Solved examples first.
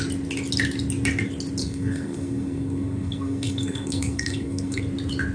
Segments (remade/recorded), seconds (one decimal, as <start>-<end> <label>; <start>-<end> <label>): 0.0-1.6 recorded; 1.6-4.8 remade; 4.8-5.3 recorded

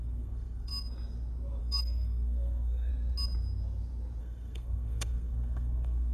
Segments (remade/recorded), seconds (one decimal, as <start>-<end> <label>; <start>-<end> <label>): 0.0-0.7 remade; 0.7-1.6 recorded; 1.6-2.9 remade; 2.9-4.2 recorded; 4.2-6.1 remade

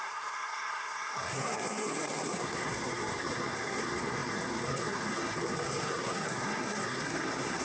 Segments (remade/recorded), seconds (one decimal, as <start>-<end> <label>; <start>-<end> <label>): 0.0-7.6 remade